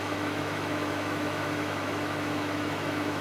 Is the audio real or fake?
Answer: fake